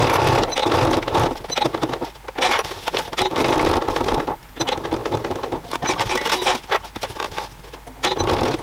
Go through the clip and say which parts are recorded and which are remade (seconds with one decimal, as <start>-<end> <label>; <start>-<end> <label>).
0.0-8.6 recorded